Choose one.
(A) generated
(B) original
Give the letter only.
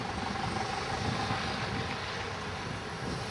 B